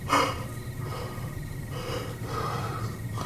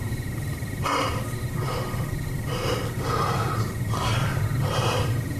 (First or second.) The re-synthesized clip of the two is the second